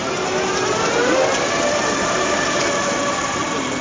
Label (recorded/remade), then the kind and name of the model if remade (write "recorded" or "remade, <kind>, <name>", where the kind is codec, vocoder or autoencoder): recorded